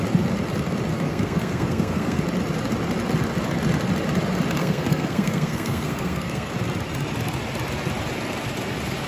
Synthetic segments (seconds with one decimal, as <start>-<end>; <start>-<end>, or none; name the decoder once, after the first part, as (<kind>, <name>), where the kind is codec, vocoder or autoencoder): 0.9-2.2 (codec, SNAC); 4.6-6.5